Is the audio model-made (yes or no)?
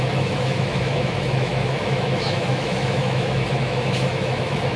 yes